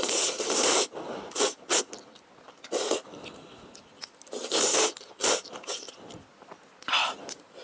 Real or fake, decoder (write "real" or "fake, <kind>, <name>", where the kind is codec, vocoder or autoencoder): real